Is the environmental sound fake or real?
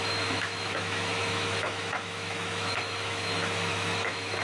fake